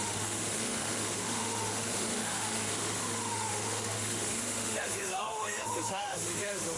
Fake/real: fake